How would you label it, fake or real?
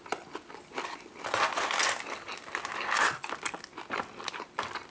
real